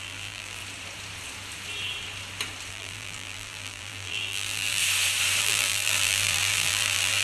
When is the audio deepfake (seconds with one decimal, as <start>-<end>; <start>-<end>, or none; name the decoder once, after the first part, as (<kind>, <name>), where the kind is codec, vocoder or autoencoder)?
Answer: 0.0-0.6 (vocoder, BigVGAN v2); 2.7-4.8; 5.4-7.2